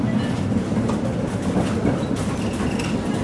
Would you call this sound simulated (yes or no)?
no